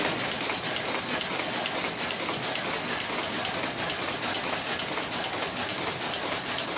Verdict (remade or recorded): recorded